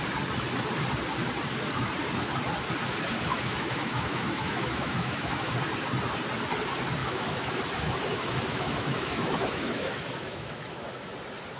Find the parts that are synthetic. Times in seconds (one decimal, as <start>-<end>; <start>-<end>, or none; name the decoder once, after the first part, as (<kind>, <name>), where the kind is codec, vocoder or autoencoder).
3.3-5.5 (autoencoder, DAC-VAE); 7.0-7.6; 8.1-11.1

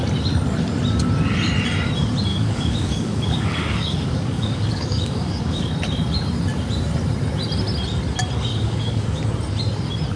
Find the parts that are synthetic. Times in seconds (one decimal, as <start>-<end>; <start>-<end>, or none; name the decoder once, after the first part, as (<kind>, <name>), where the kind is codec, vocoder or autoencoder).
2.3-5.7 (codec, DAC); 8.5-9.2

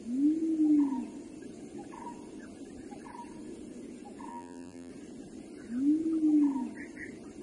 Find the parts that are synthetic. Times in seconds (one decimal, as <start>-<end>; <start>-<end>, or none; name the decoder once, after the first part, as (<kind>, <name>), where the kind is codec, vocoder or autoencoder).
4.3-4.9 (vocoder, BigVGAN v2)

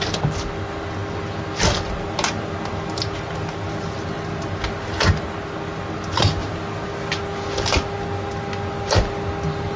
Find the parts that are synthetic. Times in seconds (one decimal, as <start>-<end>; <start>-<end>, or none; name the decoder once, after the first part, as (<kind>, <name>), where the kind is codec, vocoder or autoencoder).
none

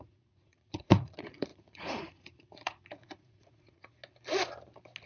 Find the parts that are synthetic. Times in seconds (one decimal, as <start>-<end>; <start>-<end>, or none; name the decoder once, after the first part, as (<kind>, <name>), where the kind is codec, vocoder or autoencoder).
0.0-4.0 (vocoder, Vocos)

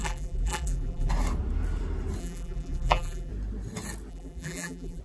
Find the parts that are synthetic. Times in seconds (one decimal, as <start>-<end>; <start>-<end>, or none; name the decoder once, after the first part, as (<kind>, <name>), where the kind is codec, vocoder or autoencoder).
0.0-1.1 (vocoder, BigVGAN v2); 2.2-3.3; 4.1-5.0

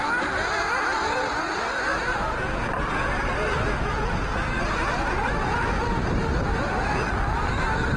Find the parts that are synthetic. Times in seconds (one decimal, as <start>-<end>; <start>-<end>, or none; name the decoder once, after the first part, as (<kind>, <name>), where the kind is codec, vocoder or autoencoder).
none

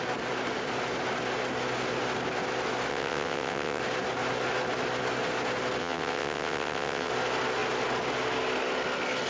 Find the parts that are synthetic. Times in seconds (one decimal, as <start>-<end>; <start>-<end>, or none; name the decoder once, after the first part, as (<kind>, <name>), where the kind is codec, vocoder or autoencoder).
2.9-3.8 (vocoder, WaveNeXt); 5.8-7.1